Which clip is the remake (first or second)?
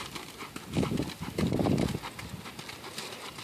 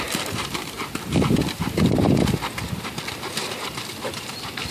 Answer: second